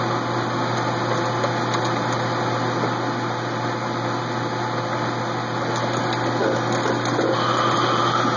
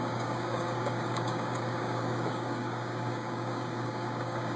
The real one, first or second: first